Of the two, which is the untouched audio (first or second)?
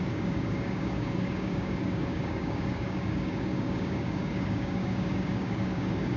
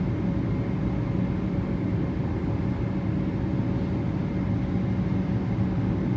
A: second